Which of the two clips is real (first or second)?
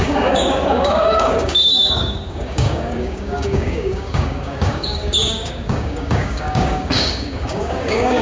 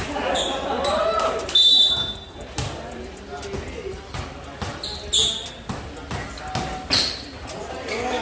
second